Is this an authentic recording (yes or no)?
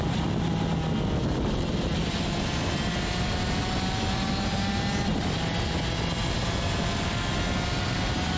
yes